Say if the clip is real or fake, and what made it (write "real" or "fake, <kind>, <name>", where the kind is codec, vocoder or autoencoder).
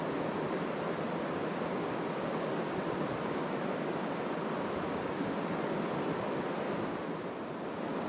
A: real